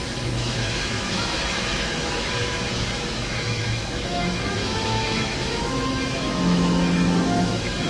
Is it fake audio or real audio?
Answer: fake